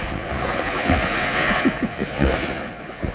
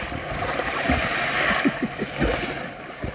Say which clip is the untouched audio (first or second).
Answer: second